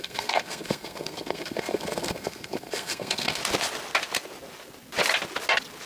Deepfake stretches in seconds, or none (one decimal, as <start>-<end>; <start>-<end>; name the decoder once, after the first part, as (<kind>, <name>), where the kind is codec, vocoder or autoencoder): 0.0-3.4 (codec, SNAC)